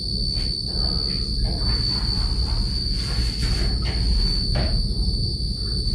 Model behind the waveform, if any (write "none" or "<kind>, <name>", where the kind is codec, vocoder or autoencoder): none